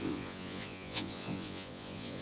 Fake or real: fake